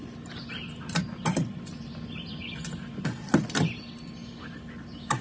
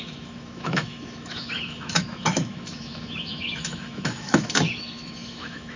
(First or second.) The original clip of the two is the first